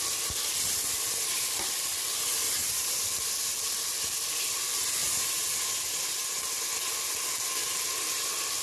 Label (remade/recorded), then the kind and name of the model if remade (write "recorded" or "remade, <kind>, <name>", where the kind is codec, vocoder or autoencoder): recorded